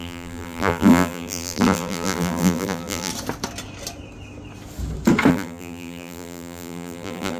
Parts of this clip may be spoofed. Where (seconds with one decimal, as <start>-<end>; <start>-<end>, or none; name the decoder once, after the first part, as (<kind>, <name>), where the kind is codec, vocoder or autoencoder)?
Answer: 0.0-3.1 (vocoder, BigVGAN v2); 5.3-7.4

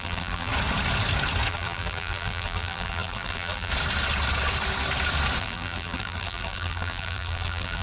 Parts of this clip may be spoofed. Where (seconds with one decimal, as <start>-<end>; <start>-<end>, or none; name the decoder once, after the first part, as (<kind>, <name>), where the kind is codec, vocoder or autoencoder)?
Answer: 0.0-0.5 (vocoder, BigVGAN v2); 1.5-3.7; 5.4-7.8